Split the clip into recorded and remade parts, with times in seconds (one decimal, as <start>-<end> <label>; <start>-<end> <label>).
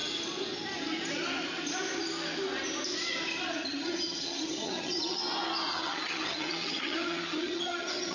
0.0-3.5 recorded; 3.5-5.2 remade; 5.2-5.7 recorded; 5.7-8.1 remade